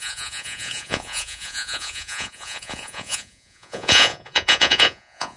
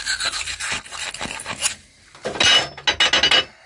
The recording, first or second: second